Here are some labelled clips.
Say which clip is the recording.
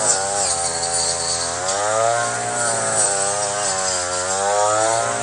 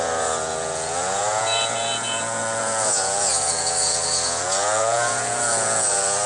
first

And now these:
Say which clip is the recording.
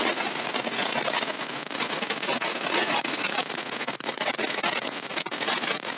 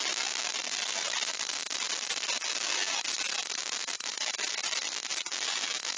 second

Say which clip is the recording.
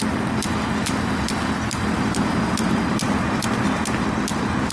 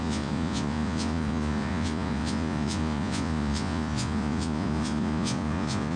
first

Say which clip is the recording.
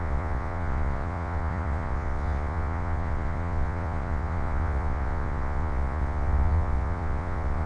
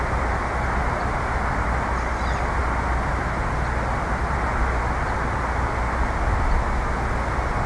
second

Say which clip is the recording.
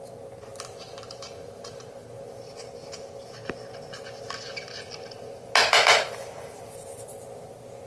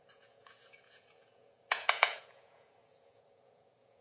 first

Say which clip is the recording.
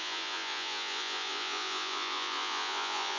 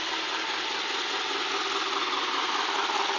second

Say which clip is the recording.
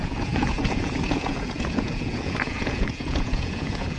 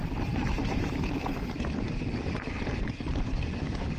second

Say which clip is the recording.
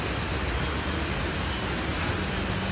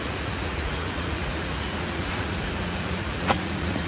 first